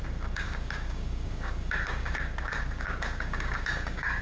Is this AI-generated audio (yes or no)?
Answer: yes